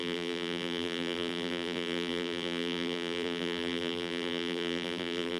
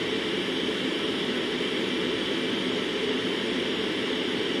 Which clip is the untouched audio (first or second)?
second